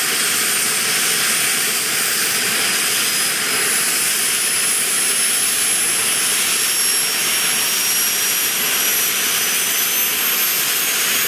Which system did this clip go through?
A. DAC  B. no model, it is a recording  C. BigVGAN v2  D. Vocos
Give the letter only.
B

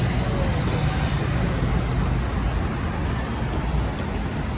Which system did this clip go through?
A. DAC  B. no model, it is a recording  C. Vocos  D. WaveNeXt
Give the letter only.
B